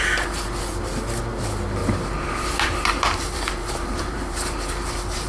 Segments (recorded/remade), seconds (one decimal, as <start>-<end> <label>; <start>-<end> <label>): 0.0-1.8 recorded; 1.8-5.3 remade